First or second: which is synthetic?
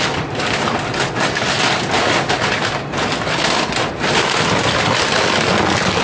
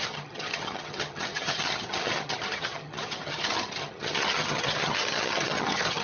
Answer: second